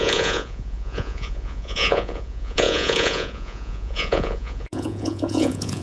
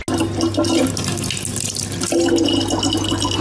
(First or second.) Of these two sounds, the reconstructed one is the first